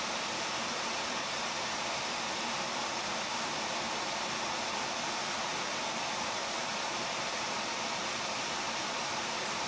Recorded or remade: remade